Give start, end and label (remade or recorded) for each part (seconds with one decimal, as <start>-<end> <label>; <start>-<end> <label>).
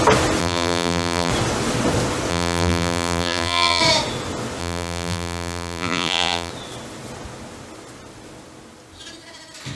0.0-0.4 recorded; 0.4-1.3 remade; 1.3-2.3 recorded; 2.3-3.8 remade; 3.8-4.6 recorded; 4.6-6.5 remade; 6.5-9.7 recorded